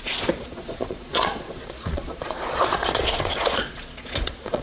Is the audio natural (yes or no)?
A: no